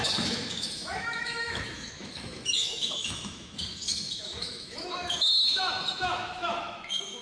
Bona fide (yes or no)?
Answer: no